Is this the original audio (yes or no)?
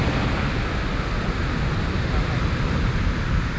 yes